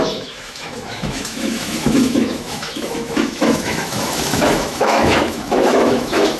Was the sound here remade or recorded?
remade